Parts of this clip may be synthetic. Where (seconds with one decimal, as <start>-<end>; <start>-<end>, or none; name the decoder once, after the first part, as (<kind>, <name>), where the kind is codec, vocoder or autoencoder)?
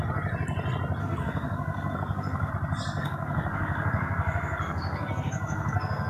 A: 1.0-2.5 (codec, SNAC); 3.0-6.1